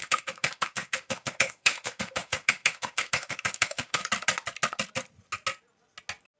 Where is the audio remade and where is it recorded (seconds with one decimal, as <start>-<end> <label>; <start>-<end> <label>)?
0.0-4.0 remade; 4.0-6.4 recorded